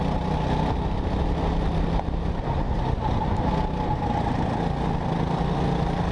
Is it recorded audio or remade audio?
recorded